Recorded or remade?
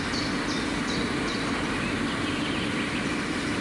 recorded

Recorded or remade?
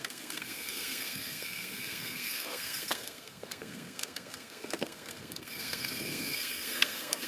remade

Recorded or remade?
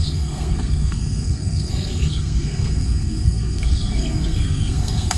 remade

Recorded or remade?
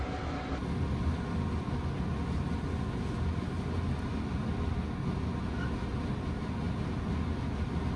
recorded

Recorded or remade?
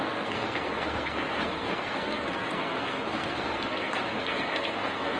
remade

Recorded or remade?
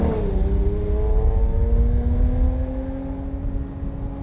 recorded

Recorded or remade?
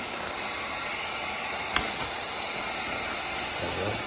recorded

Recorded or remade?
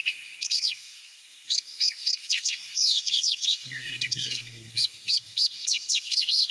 remade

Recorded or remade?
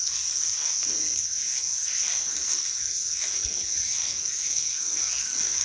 remade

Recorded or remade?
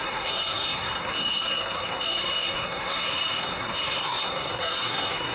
remade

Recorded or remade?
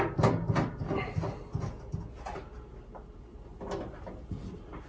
recorded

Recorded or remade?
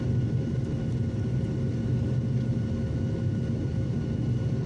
recorded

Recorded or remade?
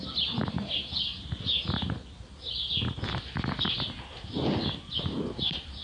recorded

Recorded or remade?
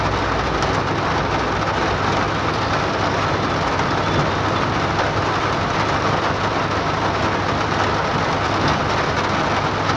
recorded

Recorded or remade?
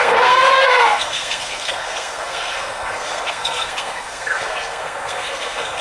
remade